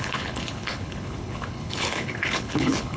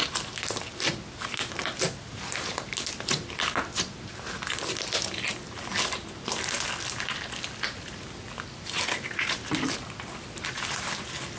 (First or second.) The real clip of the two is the second